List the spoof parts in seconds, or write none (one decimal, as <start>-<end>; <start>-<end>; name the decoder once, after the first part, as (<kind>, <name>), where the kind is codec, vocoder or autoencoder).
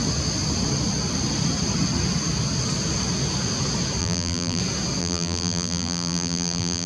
4.0-4.6 (vocoder, BigVGAN v2); 5.0-6.9